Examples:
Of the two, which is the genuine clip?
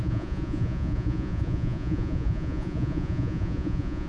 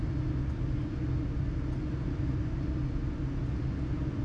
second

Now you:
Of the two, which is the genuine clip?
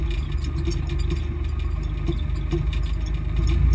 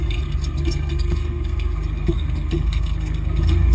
first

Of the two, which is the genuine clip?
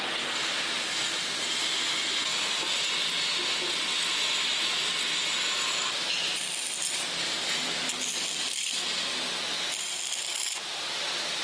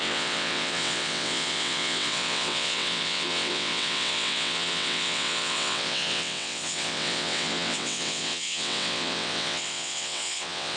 first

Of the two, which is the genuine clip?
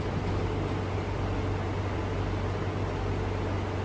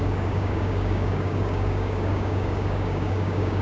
first